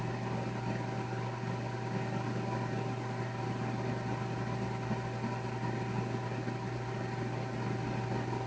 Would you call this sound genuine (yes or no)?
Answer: yes